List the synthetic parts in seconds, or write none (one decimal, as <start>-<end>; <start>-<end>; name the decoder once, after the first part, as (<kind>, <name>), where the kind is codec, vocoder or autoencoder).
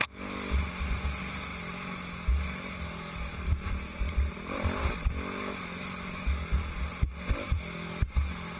none